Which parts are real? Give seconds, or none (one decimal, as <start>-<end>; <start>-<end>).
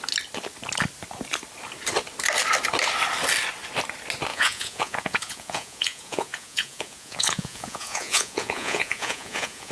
0.0-4.3